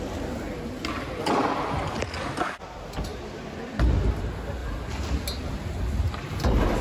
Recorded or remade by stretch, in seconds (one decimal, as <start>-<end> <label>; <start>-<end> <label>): 0.0-6.8 recorded